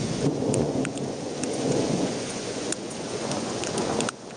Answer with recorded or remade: remade